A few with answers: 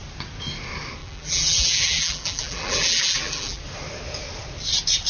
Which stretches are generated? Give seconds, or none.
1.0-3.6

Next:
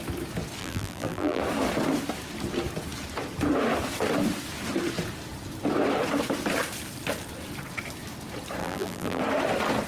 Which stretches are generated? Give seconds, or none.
0.6-1.4; 8.6-9.2

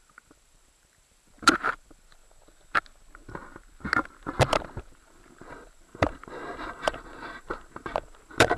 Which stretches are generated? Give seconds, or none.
0.0-2.2; 4.8-6.4; 7.0-8.6

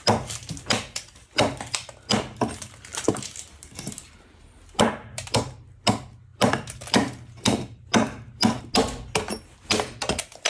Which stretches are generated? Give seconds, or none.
2.9-5.4; 6.3-8.6

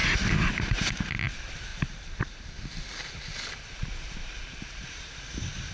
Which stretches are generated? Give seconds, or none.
1.7-5.1

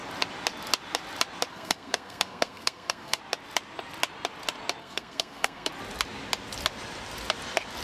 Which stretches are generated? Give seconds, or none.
1.5-3.2; 4.8-5.7

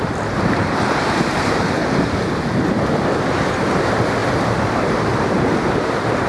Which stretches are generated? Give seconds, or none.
0.0-1.8; 3.6-6.3